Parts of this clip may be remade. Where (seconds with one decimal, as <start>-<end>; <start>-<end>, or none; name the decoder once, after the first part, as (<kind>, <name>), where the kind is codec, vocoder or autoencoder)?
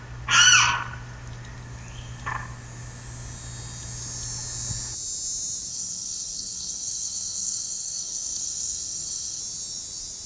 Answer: 5.7-9.4 (codec, SNAC)